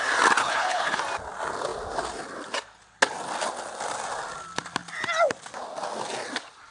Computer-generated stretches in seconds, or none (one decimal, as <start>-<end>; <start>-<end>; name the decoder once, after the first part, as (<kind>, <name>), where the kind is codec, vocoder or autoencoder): 0.4-1.0 (codec, HILCodec)